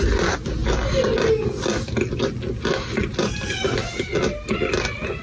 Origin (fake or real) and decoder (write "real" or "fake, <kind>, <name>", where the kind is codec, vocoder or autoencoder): real